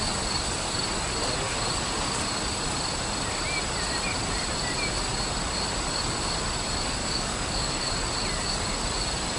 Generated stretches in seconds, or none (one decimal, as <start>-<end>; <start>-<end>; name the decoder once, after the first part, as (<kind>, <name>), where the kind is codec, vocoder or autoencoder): 7.0-7.8 (codec, DAC)